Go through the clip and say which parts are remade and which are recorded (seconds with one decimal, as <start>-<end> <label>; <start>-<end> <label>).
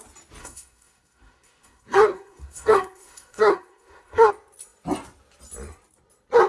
0.0-0.4 recorded; 0.4-4.3 remade; 4.3-6.5 recorded